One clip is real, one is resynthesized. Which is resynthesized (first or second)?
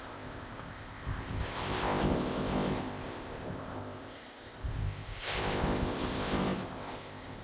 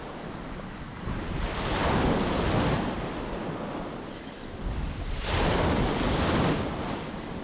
first